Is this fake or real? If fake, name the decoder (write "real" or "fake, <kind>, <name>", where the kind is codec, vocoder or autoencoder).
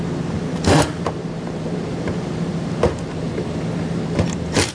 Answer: fake, vocoder, BigVGAN v2